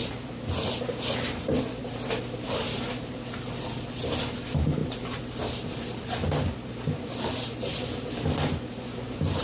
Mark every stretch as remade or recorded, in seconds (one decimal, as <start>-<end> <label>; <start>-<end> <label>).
0.0-9.4 recorded